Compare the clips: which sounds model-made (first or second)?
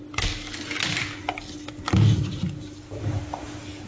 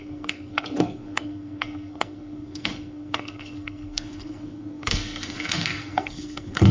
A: second